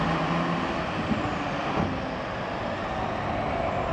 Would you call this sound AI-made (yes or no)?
no